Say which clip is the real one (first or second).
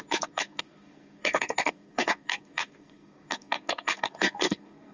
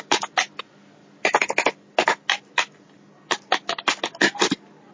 second